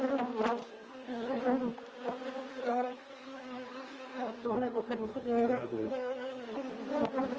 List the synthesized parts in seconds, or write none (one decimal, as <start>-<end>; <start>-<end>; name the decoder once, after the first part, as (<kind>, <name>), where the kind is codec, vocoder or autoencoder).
0.6-1.4 (codec, SNAC); 2.5-6.7